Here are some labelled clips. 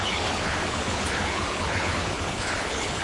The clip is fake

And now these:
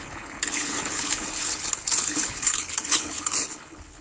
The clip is fake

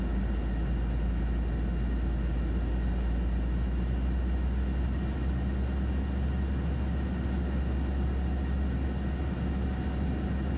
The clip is real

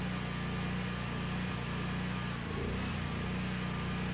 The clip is real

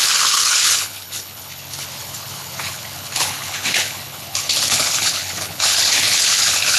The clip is fake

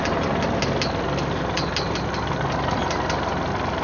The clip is real